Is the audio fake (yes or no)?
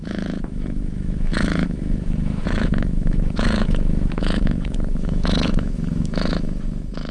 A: yes